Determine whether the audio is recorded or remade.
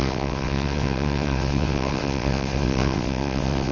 remade